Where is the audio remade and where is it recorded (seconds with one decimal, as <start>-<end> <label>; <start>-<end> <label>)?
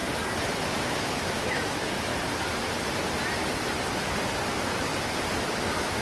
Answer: 0.0-0.8 recorded; 0.8-2.1 remade; 2.1-4.5 recorded; 4.5-4.9 remade; 4.9-5.5 recorded; 5.5-6.0 remade